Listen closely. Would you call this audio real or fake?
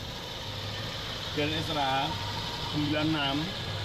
real